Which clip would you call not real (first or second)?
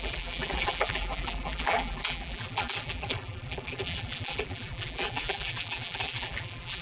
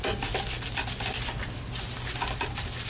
first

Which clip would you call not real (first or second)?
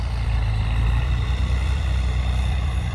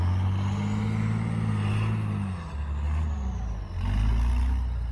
first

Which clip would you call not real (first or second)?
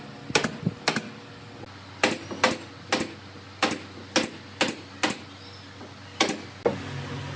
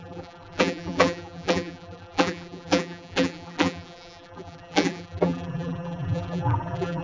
second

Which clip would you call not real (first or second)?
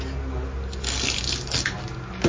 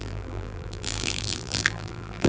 second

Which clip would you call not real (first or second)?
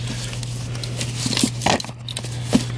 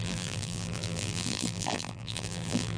second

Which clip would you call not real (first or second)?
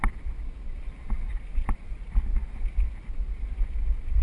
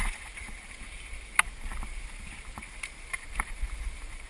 second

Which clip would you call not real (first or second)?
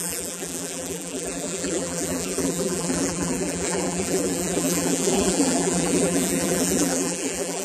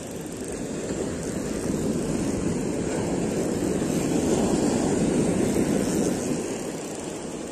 first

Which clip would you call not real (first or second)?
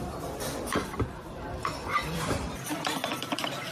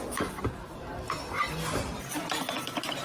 first